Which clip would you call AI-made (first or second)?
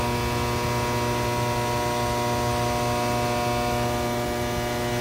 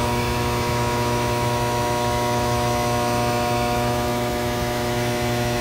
second